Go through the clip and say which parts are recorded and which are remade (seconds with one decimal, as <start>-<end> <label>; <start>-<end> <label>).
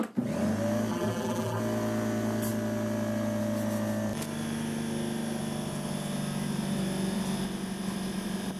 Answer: 0.0-0.9 recorded; 0.9-1.6 remade; 1.6-8.6 recorded